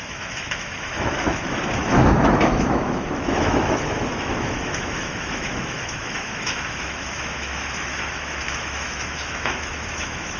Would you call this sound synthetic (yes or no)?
yes